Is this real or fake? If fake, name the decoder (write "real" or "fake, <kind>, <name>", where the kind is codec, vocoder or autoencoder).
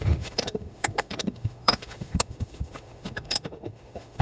fake, autoencoder, DAC-VAE